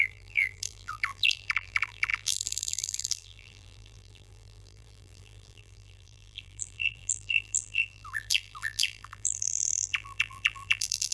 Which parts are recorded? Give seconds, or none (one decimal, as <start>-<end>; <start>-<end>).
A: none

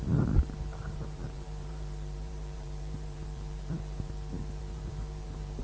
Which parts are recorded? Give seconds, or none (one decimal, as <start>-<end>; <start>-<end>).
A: 0.0-0.7; 4.1-4.6

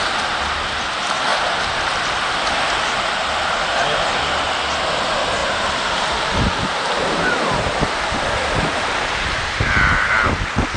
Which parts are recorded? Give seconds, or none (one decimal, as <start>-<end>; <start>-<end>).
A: 0.0-5.4; 10.3-10.8